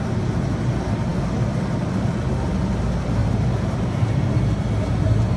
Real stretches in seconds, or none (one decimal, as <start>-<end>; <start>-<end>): 0.0-3.2; 4.3-5.4